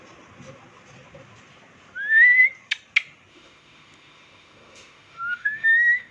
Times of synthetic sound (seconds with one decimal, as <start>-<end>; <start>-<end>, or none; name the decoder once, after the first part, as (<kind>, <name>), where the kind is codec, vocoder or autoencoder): 3.3-6.1 (autoencoder, DAC-VAE)